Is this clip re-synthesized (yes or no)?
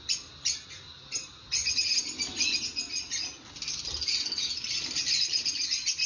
no